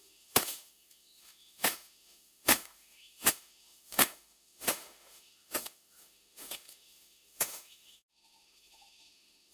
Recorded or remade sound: remade